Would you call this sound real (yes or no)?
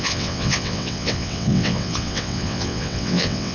no